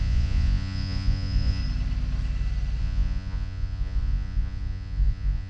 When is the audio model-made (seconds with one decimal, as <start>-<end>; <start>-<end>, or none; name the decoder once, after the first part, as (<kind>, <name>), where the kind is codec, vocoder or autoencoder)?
0.0-1.6 (vocoder, Vocos); 2.8-5.5

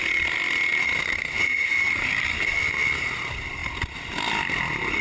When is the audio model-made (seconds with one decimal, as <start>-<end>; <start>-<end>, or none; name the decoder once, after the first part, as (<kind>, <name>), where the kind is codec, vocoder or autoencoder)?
0.7-2.5 (vocoder, BigVGAN v2)